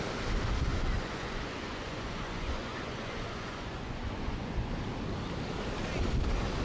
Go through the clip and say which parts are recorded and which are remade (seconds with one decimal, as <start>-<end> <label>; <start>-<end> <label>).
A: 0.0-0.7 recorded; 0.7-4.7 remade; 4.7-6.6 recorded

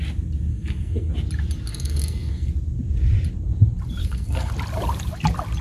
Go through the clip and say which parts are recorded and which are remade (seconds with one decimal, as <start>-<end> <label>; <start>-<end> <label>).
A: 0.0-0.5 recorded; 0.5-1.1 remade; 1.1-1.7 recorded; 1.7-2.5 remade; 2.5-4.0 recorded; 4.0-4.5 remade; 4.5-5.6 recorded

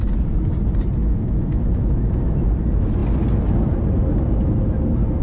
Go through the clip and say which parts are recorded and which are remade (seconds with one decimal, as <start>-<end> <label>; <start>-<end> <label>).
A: 0.0-1.0 recorded; 1.0-1.6 remade; 1.6-5.2 recorded

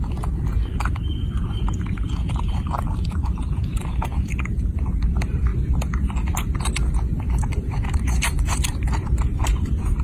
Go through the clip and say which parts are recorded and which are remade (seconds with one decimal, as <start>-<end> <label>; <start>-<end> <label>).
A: 0.0-5.5 remade; 5.5-7.3 recorded; 7.3-10.0 remade

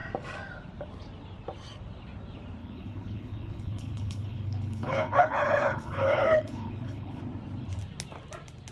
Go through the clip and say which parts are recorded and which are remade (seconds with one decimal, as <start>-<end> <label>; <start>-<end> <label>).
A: 0.0-2.6 recorded; 2.6-7.2 remade; 7.2-8.7 recorded

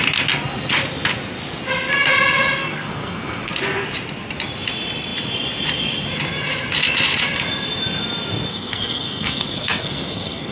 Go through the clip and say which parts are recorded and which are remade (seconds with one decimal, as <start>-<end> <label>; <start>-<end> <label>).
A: 0.0-2.6 recorded; 2.6-3.5 remade; 3.5-8.5 recorded; 8.5-10.5 remade

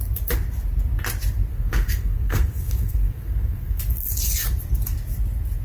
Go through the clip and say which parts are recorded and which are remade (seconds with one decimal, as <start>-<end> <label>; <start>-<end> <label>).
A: 0.0-1.5 recorded; 1.5-3.8 remade; 3.8-5.6 recorded